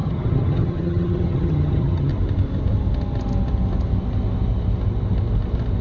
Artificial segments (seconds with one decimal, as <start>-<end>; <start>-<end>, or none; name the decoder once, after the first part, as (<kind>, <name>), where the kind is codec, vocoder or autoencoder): 0.0-2.1 (vocoder, HiFi-GAN)